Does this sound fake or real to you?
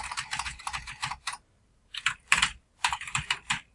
fake